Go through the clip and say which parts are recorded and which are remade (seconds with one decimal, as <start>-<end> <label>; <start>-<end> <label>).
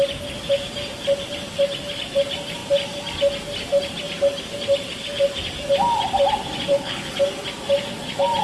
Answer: 0.0-6.7 recorded; 6.7-7.2 remade; 7.2-8.4 recorded